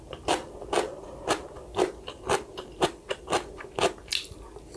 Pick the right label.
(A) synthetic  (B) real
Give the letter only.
B